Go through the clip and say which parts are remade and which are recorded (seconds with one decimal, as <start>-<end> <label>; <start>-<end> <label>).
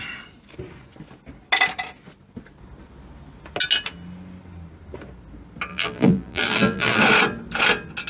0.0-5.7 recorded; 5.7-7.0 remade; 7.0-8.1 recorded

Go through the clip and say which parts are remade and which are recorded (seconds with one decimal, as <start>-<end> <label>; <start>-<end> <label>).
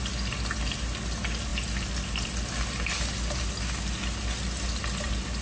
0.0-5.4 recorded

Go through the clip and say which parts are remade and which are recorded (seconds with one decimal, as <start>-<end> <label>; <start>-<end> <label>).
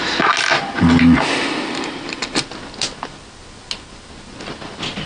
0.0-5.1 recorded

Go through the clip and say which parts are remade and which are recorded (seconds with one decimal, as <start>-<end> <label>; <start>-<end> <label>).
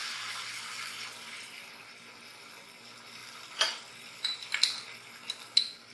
0.0-1.7 remade; 1.7-3.2 recorded; 3.2-3.9 remade; 3.9-5.9 recorded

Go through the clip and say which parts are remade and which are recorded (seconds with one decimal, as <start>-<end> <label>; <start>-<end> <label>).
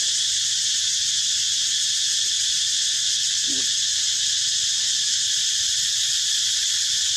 0.0-7.2 recorded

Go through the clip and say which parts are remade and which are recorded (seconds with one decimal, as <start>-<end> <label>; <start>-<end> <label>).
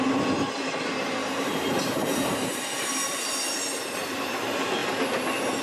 0.0-1.2 recorded; 1.2-3.6 remade; 3.6-5.6 recorded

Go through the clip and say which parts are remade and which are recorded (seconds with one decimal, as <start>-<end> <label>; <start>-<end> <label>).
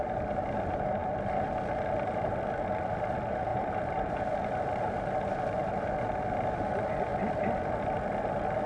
0.0-3.5 recorded; 3.5-4.3 remade; 4.3-8.7 recorded